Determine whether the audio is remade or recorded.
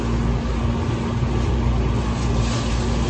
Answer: recorded